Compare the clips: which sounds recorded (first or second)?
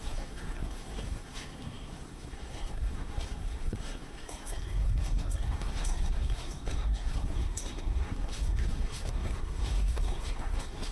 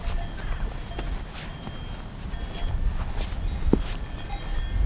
second